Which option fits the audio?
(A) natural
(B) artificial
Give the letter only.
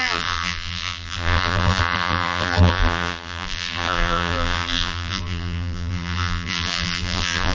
B